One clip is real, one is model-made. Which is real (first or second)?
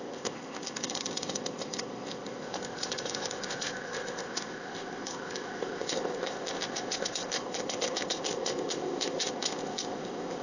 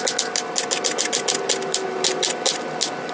second